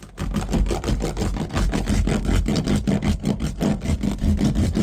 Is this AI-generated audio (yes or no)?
no